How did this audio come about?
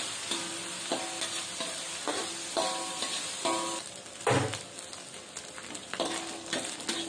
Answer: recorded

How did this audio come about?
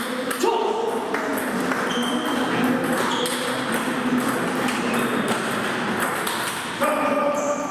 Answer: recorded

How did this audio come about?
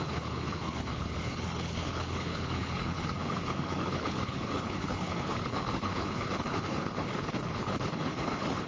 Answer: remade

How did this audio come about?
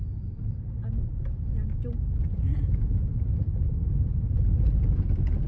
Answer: recorded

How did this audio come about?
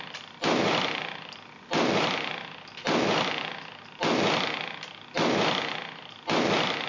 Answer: recorded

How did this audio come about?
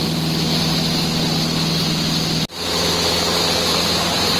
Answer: recorded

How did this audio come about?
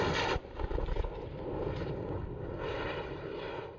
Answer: recorded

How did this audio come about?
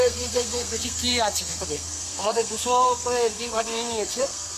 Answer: remade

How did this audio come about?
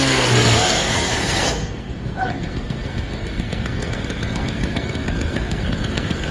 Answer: remade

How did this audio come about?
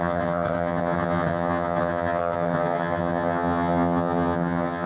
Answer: remade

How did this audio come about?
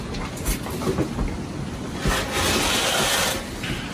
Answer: recorded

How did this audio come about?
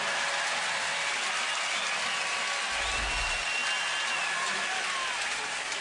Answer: recorded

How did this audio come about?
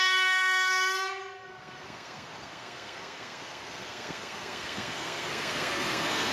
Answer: remade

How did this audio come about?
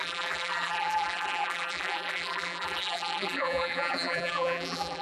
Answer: remade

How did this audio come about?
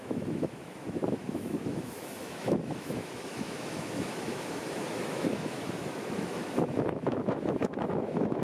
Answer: remade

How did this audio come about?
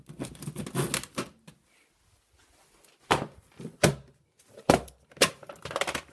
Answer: recorded